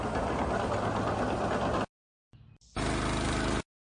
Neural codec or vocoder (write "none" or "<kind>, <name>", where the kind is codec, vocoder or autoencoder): none